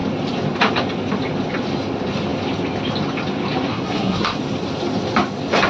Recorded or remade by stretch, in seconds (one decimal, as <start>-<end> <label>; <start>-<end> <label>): 0.0-3.7 recorded; 3.7-4.4 remade; 4.4-5.7 recorded